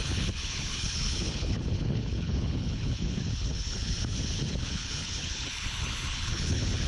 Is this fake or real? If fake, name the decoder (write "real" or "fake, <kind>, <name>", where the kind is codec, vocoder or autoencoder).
fake, codec, HILCodec